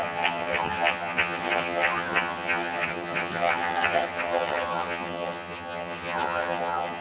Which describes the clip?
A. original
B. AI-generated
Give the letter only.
B